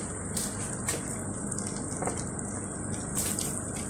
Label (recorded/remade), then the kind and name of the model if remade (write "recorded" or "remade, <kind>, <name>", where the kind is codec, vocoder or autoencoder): recorded